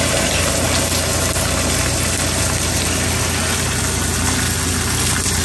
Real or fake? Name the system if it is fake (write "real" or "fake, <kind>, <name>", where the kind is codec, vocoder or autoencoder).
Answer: real